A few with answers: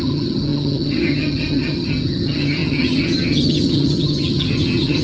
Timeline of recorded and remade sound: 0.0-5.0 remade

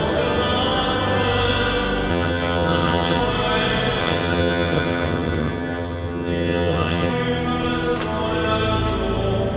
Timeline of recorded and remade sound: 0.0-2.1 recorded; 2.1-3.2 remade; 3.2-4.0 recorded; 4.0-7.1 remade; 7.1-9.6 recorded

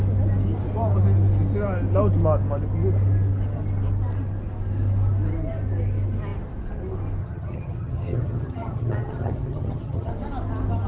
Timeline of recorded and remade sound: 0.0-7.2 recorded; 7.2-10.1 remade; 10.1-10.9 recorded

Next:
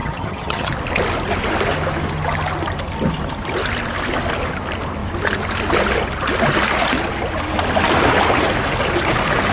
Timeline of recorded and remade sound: 0.0-0.7 remade; 0.7-9.5 recorded